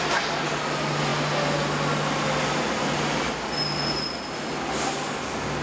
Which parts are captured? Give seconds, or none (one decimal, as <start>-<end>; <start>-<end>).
0.0-5.6

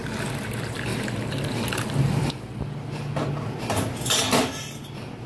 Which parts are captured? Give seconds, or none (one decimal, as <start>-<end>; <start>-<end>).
0.0-5.3

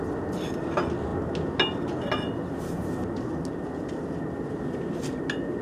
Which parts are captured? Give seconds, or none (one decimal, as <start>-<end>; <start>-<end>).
0.0-5.6

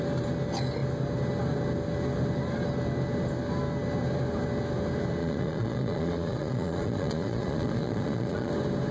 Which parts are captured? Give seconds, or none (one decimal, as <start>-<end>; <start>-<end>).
0.0-5.2; 8.5-8.9